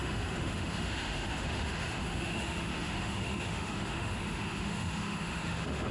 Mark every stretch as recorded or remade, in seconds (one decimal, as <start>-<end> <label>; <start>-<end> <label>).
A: 0.0-5.9 remade